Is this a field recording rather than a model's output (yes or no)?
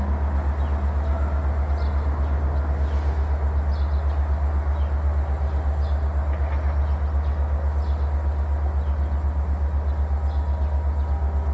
yes